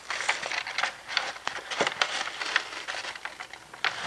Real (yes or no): yes